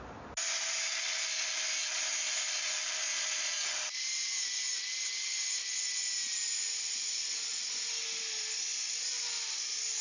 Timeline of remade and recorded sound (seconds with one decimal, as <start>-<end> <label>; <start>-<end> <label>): 0.0-10.0 recorded